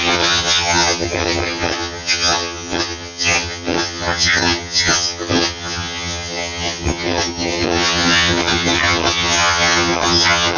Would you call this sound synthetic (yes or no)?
yes